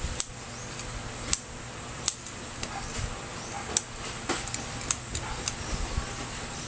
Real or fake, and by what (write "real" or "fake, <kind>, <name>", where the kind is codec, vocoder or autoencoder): real